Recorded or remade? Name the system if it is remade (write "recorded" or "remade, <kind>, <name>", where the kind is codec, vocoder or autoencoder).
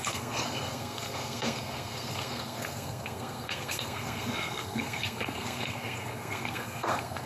remade, codec, SNAC